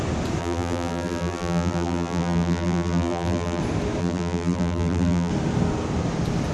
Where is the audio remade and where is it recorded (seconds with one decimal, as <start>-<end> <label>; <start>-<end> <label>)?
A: 0.0-0.4 recorded; 0.4-3.6 remade; 3.6-4.0 recorded; 4.0-5.3 remade; 5.3-6.5 recorded